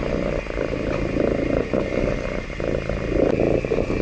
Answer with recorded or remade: recorded